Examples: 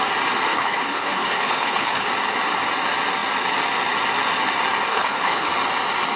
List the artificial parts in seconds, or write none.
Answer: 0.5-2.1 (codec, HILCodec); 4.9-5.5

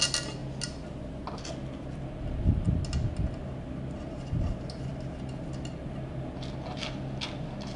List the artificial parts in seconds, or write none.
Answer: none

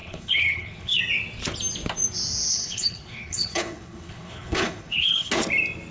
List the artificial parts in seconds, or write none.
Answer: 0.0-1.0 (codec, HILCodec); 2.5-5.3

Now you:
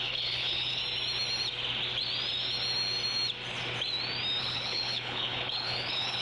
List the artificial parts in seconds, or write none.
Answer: 0.0-0.8 (codec, HILCodec); 4.4-6.2

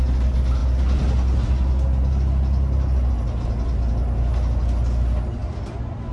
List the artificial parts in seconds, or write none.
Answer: none

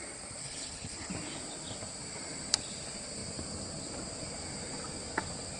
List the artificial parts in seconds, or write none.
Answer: 0.4-1.1 (codec, HILCodec)

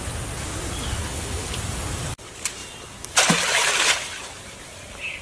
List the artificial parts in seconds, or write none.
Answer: 1.0-1.6 (codec, HILCodec)

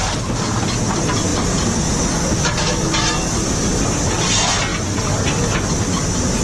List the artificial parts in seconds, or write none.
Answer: none